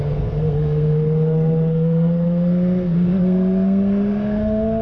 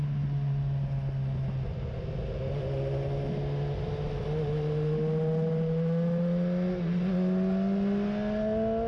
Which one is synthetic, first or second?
first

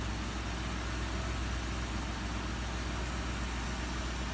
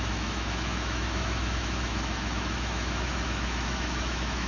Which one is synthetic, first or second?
second